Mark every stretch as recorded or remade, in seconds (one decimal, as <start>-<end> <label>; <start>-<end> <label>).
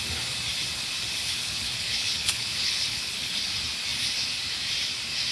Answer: 0.0-1.2 recorded; 1.2-3.5 remade; 3.5-5.3 recorded